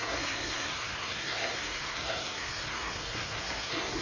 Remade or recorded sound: remade